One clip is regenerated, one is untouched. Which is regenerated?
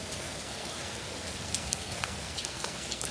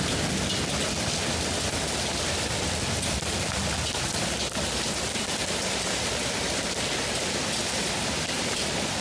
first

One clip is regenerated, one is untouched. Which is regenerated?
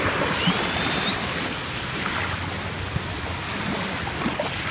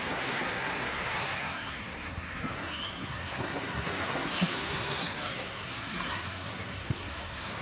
second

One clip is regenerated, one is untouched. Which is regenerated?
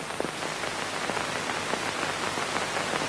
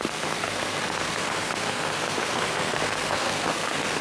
second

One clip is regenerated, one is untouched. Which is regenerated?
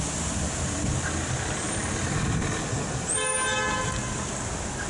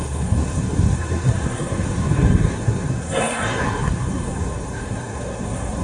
second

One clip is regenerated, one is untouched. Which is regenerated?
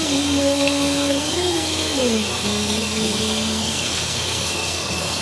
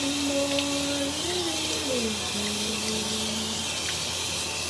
first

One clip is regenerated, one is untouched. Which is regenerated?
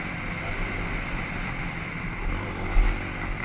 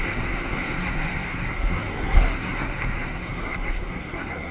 second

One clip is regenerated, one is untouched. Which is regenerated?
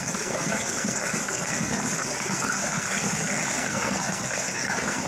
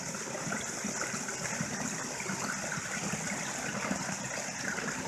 first